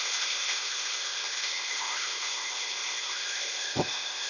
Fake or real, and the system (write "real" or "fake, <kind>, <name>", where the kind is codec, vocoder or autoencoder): fake, codec, ZipCodec